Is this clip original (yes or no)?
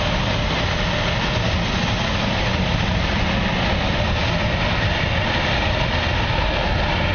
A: yes